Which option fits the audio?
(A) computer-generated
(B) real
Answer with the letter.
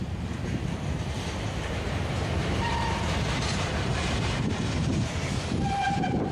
A